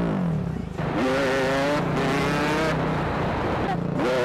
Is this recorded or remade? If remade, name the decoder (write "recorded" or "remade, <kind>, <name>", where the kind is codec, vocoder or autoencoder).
recorded